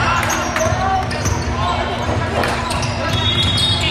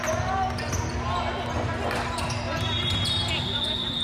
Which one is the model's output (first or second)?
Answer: first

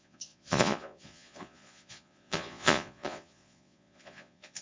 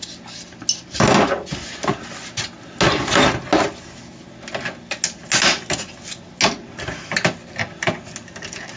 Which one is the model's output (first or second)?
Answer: first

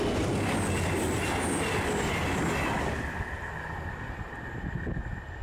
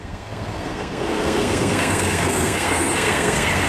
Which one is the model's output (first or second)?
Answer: second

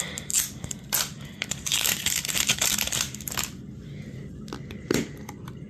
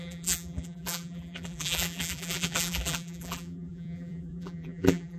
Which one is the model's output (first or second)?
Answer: second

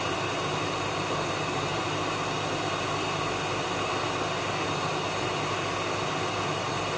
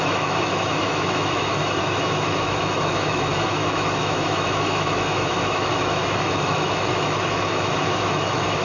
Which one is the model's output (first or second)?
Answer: second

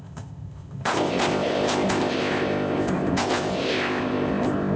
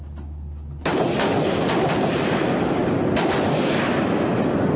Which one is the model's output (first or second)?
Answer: first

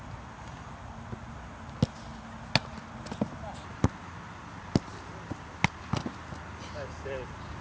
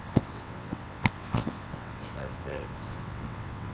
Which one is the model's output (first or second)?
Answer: second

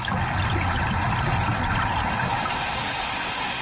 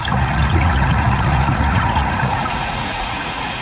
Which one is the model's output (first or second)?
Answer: second